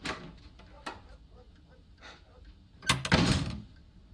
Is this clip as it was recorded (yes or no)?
yes